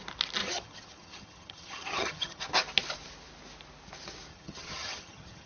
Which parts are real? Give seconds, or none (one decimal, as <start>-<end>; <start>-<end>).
0.0-0.4; 2.4-4.3